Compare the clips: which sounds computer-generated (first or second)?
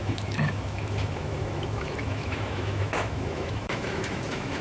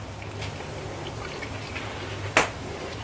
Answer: first